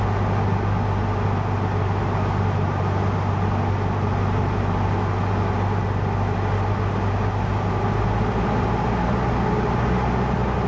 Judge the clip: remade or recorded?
recorded